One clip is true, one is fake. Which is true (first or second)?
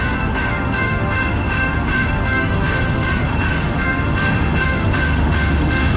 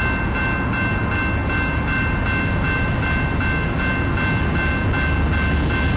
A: second